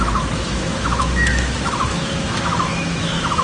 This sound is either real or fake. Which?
fake